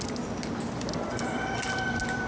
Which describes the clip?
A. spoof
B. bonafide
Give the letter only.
B